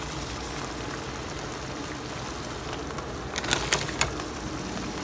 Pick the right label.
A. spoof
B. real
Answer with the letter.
B